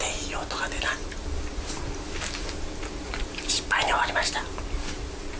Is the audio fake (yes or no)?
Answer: no